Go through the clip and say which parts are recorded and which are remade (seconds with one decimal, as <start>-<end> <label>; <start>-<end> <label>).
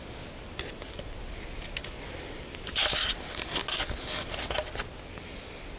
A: 0.0-5.8 recorded